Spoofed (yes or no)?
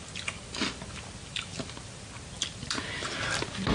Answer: no